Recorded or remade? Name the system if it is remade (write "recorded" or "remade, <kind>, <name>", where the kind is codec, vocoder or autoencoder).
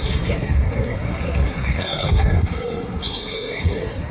remade, codec, SNAC